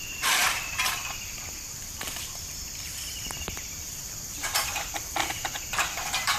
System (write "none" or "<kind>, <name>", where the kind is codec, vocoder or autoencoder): vocoder, BigVGAN v2